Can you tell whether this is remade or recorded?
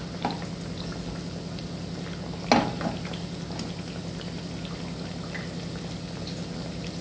recorded